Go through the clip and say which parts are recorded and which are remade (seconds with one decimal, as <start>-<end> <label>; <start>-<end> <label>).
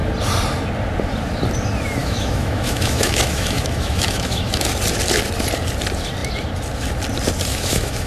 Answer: 0.0-2.0 recorded; 2.0-4.7 remade; 4.7-7.5 recorded; 7.5-8.1 remade